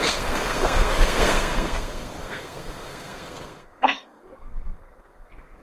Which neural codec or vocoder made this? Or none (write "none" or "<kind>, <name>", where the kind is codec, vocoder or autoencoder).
codec, SNAC